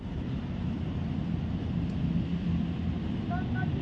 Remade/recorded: recorded